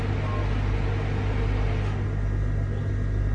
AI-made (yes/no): no